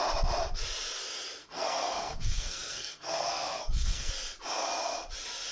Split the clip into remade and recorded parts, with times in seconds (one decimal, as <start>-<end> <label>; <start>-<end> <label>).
0.0-1.4 recorded; 1.4-4.1 remade; 4.1-5.5 recorded